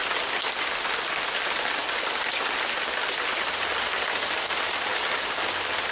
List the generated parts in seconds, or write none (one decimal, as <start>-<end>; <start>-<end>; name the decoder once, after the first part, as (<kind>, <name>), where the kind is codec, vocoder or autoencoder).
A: 0.0-0.7 (vocoder, BigVGAN v2)